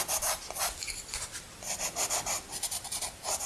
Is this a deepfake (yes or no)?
no